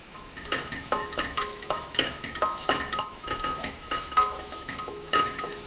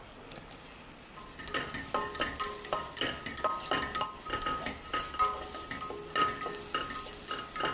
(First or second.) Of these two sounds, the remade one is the first